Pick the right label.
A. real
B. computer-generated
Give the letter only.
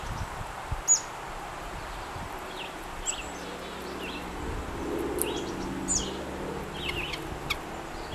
A